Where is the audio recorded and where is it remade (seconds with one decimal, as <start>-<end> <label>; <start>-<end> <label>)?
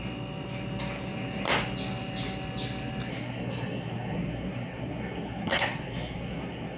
0.0-3.1 recorded; 3.1-6.8 remade